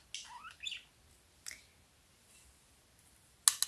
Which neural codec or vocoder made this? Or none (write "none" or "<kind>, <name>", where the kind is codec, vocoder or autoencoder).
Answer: none